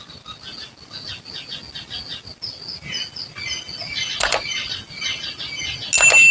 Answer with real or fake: real